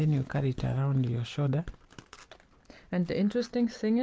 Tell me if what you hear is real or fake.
real